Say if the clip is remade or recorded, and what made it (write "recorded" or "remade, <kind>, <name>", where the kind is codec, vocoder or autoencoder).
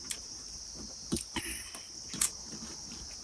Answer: remade, vocoder, BigVGAN v2